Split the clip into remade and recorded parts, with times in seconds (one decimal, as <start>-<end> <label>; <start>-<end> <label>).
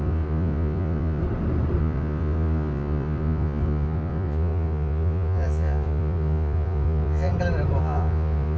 0.0-1.2 remade; 1.2-1.8 recorded; 1.8-7.3 remade; 7.3-7.8 recorded; 7.8-8.6 remade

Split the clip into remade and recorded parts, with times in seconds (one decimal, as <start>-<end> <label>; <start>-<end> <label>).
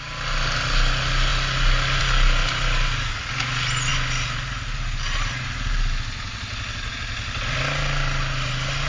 0.0-8.9 recorded